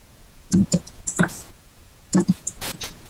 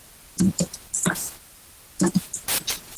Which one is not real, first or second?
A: first